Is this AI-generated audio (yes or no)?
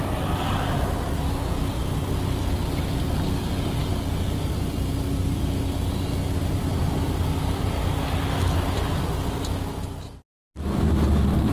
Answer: no